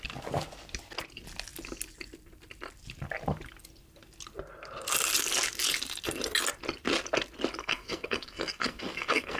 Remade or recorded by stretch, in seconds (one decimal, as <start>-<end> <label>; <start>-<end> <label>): 0.0-7.6 recorded; 7.6-9.4 remade